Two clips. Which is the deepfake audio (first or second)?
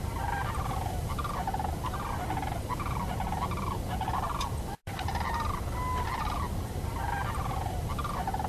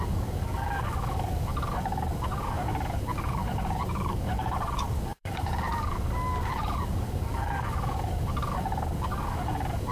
second